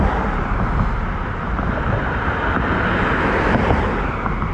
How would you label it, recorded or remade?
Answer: recorded